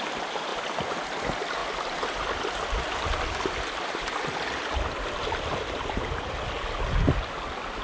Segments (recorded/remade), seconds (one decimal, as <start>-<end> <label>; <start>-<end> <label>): 0.0-0.5 recorded; 0.5-1.2 remade; 1.2-1.6 recorded; 1.6-6.3 remade; 6.3-7.8 recorded